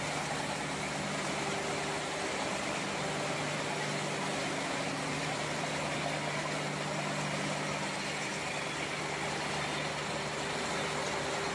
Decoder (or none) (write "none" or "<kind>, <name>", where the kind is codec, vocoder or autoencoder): none